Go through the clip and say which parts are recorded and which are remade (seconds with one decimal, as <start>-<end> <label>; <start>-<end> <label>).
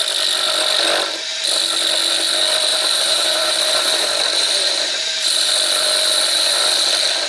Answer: 0.0-2.7 recorded; 2.7-5.5 remade; 5.5-7.3 recorded